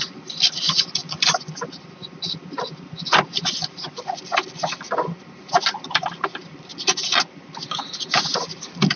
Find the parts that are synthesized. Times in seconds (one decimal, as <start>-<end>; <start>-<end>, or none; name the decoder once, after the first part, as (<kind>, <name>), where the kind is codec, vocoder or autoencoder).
0.0-1.0 (vocoder, BigVGAN v2); 1.9-4.3; 5.2-6.7